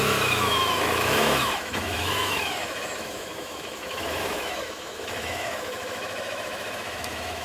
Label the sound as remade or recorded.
remade